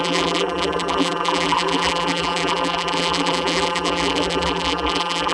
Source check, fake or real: fake